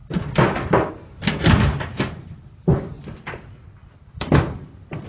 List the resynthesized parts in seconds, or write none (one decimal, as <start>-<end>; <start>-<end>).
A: 0.0-0.9; 1.9-2.9; 3.8-5.1